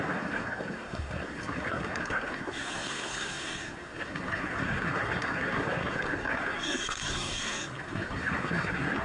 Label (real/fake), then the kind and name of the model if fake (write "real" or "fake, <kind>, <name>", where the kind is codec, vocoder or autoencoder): fake, codec, SNAC